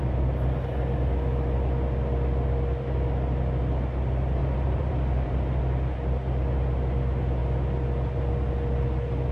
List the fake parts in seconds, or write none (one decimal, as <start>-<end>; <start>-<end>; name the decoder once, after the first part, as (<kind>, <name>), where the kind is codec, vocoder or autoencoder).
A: 4.4-5.6 (vocoder, BigVGAN v2)